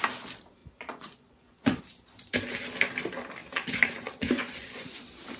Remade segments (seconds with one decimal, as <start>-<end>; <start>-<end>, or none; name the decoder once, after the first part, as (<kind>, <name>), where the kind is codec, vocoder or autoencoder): 0.6-1.8 (vocoder, Vocos); 3.4-5.0

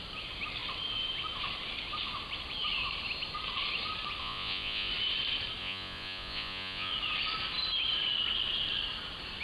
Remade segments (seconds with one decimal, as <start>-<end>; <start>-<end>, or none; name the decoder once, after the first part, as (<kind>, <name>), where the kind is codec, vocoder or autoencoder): 4.2-4.9 (vocoder, Vocos); 5.6-6.9

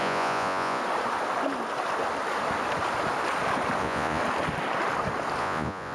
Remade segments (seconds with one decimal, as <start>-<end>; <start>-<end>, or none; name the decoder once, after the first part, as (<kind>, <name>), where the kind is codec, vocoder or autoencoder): 0.0-0.8 (vocoder, Vocos); 3.8-4.2; 5.4-5.9

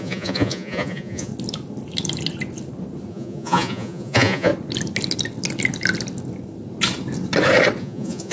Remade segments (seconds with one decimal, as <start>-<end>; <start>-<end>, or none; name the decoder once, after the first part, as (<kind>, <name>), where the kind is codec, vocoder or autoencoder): 0.0-1.3 (vocoder, Vocos); 3.1-4.5; 7.8-8.3

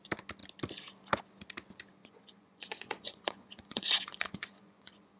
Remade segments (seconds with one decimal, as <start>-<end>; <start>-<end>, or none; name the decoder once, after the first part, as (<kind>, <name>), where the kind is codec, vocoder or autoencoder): 2.0-5.2 (vocoder, Vocos)